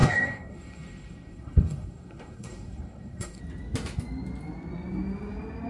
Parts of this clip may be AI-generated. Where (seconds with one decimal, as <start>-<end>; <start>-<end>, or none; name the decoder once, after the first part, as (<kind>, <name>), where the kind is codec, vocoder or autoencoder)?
0.0-3.4 (codec, SNAC)